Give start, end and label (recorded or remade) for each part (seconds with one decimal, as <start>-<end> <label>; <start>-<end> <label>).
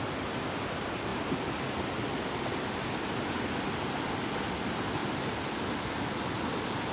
0.0-6.9 recorded